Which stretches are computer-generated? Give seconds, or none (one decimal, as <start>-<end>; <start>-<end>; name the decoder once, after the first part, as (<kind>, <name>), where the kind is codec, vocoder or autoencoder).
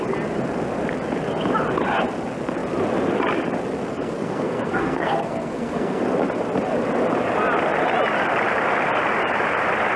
3.9-6.0 (codec, SNAC)